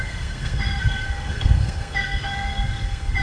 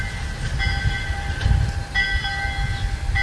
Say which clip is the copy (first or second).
first